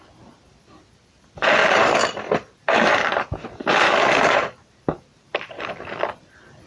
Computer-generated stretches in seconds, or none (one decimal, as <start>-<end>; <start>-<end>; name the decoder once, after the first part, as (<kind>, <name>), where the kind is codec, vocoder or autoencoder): 1.6-5.6 (vocoder, BigVGAN v2)